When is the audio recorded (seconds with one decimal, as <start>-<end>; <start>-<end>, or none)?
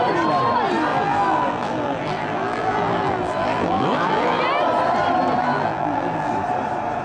0.0-0.9; 4.4-5.4; 6.3-7.0